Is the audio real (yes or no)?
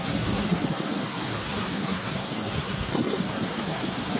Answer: no